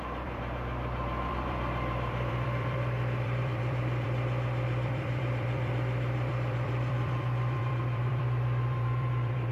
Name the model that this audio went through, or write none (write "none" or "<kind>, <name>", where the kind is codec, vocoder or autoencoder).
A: vocoder, BigVGAN v2